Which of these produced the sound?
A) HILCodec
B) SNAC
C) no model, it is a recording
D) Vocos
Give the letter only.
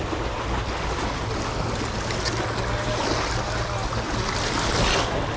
C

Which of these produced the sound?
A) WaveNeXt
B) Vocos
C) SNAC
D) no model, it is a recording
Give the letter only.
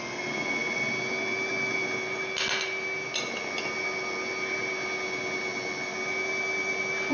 D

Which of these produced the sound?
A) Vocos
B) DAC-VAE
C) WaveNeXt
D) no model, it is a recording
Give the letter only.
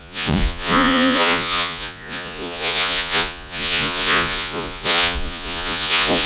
A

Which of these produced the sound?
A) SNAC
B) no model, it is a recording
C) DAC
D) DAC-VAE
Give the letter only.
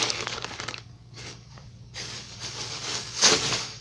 C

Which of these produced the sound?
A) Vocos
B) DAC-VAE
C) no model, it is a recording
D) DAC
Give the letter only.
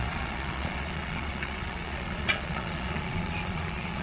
A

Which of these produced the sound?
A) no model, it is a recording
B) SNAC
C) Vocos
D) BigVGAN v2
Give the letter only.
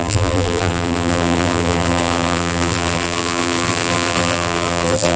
D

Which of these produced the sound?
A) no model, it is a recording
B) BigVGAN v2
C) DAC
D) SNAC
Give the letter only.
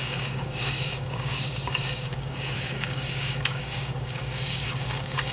C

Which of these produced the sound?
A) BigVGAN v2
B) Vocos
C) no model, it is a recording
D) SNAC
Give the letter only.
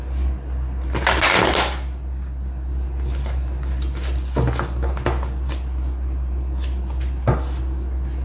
C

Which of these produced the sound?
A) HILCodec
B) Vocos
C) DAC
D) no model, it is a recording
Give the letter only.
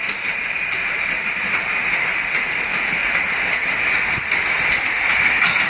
D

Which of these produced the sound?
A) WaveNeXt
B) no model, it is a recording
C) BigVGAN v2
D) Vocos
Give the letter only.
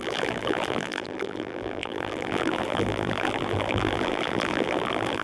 C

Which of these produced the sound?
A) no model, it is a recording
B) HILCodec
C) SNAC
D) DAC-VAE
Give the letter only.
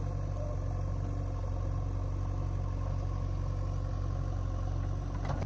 A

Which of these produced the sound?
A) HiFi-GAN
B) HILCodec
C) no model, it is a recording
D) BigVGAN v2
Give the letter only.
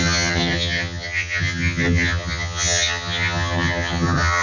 A